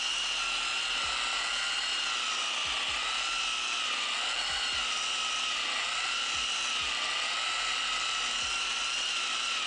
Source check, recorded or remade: recorded